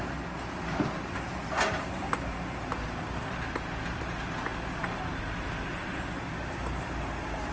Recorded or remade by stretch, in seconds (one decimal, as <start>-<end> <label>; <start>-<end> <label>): 0.0-7.5 recorded